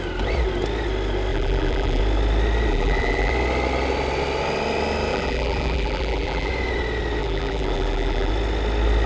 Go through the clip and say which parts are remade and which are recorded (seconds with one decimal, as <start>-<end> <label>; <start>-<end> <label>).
0.0-1.3 recorded; 1.3-2.0 remade; 2.0-2.7 recorded; 2.7-3.3 remade; 3.3-5.1 recorded; 5.1-6.5 remade; 6.5-7.2 recorded; 7.2-8.3 remade; 8.3-9.1 recorded